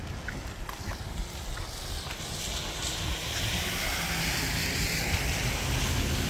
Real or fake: real